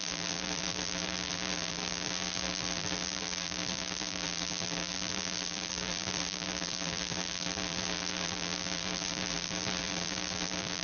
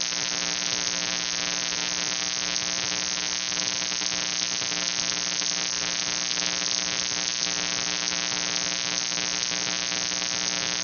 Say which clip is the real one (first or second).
second